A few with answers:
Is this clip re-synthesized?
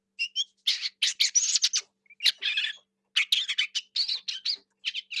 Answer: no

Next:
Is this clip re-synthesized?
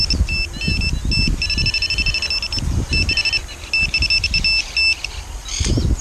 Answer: no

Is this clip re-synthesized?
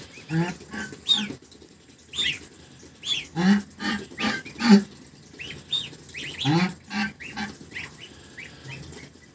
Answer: no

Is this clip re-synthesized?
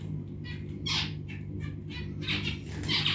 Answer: no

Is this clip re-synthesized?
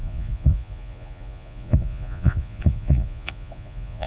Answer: yes